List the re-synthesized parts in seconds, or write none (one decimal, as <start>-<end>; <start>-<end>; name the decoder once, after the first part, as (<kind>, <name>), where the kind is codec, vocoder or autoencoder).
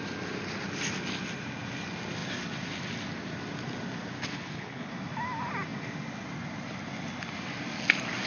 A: 4.2-4.9 (codec, HILCodec)